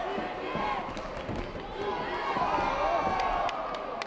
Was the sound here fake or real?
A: real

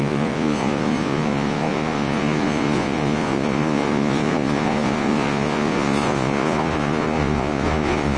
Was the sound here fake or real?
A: fake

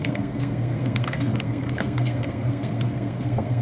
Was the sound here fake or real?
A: fake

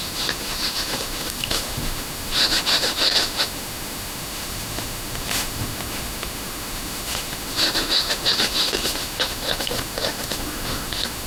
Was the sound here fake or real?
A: fake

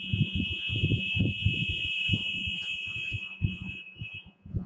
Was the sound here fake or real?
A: fake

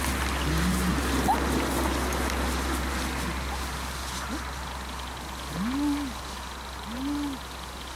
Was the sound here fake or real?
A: real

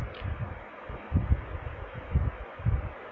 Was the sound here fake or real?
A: real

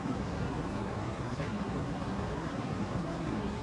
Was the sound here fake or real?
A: fake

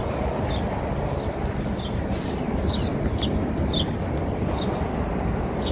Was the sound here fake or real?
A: real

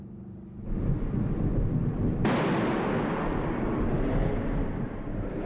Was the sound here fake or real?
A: real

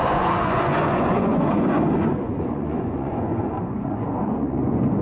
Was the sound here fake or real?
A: fake